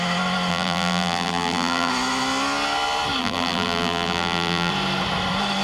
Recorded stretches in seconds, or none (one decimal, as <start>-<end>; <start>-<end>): 0.0-0.5; 1.9-3.2; 4.7-5.6